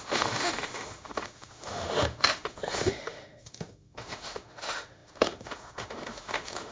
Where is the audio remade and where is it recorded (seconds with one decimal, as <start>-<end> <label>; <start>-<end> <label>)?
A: 0.0-6.7 remade